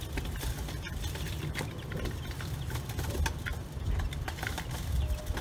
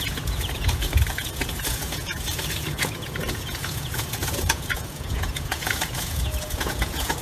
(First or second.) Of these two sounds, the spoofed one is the second